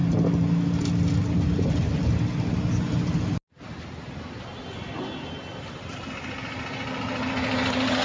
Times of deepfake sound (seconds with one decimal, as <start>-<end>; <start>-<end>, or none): none